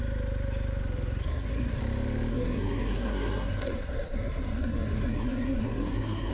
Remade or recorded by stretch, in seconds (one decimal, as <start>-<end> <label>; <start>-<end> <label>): 0.0-1.2 recorded; 1.2-1.8 remade; 1.8-2.3 recorded; 2.3-6.3 remade